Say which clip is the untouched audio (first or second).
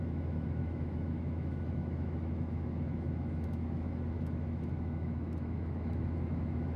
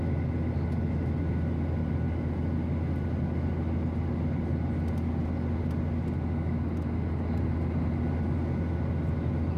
second